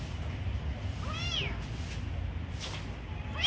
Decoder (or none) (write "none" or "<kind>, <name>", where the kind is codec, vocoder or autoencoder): none